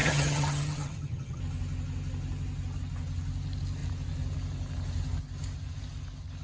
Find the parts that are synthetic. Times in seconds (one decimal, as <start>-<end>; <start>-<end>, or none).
0.0-1.4

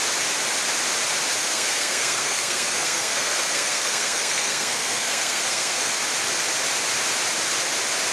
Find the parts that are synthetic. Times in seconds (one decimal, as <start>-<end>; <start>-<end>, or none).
1.4-5.9

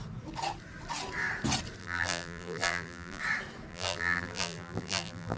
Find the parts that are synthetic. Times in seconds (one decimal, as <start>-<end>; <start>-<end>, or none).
1.8-3.2; 3.7-5.4